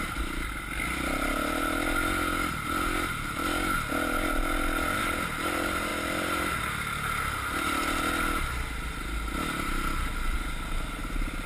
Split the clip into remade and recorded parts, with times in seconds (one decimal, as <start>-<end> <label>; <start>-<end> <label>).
0.0-11.5 recorded